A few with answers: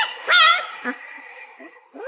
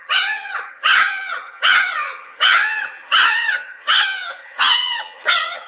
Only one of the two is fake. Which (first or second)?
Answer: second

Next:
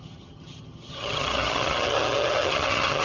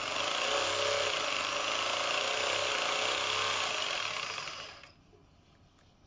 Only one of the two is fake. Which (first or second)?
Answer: first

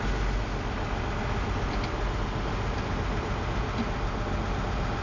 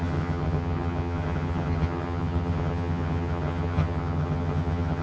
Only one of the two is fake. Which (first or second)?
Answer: second